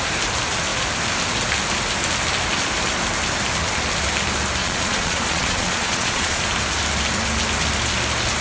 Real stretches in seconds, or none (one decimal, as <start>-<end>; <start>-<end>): 0.0-4.6; 6.4-8.4